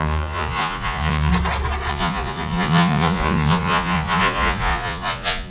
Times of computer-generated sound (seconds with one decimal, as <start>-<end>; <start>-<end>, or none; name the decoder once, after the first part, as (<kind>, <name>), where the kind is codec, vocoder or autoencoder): 0.0-1.3 (vocoder, Vocos); 1.9-5.5